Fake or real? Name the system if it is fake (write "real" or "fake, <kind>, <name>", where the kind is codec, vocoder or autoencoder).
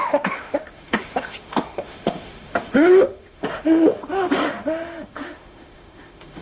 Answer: fake, autoencoder, DAC-VAE